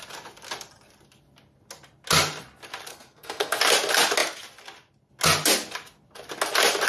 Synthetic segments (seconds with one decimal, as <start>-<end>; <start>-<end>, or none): 2.9-3.6